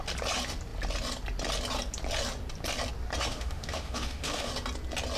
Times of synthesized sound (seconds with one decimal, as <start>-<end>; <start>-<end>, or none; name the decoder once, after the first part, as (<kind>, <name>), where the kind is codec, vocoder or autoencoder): 3.3-4.5 (autoencoder, DAC-VAE)